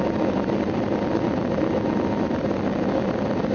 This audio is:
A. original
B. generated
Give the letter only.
A